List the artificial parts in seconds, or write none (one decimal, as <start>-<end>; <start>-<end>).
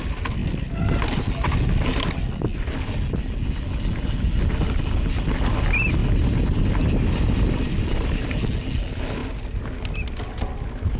none